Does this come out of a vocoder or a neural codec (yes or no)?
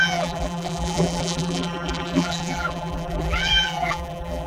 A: yes